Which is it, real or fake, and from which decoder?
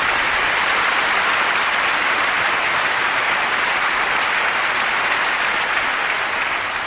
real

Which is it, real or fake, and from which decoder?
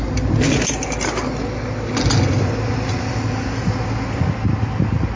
real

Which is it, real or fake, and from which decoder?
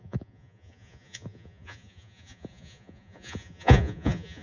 fake, vocoder, Vocos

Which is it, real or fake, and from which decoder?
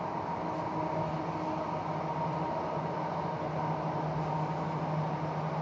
real